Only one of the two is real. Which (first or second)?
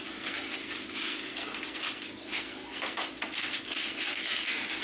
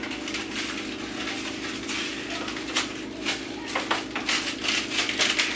second